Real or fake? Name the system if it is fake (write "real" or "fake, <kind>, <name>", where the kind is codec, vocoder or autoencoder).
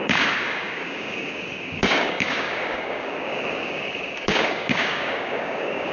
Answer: fake, codec, DAC